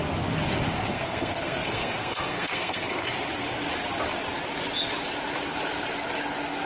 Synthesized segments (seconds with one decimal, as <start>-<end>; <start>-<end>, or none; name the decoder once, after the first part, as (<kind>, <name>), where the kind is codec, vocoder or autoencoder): 0.9-3.0 (codec, SNAC)